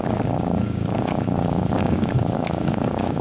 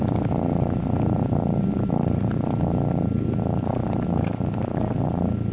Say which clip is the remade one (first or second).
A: first